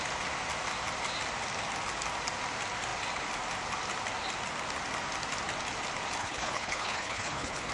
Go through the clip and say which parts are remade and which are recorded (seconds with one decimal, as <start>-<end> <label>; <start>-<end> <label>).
0.0-6.2 recorded; 6.2-7.7 remade